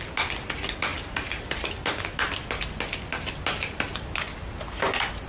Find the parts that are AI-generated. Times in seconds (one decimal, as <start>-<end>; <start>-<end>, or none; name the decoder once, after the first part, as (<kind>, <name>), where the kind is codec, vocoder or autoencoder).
none